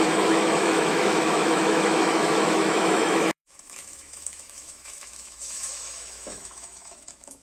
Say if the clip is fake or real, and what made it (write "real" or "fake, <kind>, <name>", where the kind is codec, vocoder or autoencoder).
fake, autoencoder, DAC-VAE